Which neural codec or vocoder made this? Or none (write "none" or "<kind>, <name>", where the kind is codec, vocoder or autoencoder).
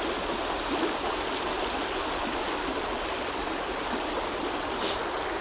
none